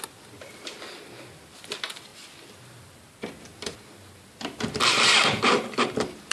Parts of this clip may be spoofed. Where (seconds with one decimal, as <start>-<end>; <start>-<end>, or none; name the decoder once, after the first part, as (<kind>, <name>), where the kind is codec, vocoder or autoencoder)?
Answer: none